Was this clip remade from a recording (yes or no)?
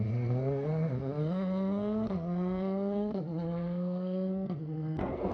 yes